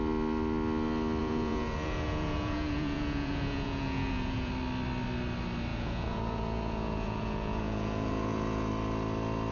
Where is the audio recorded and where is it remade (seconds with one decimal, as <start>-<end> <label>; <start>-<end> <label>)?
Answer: 0.0-1.2 recorded; 1.2-4.5 remade; 4.5-5.7 recorded; 5.7-8.7 remade; 8.7-9.5 recorded